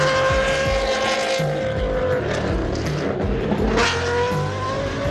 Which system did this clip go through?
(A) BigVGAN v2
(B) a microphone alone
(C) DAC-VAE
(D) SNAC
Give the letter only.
B